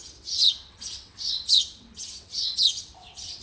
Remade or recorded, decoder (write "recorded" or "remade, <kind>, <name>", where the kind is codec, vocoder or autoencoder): remade, vocoder, WaveNeXt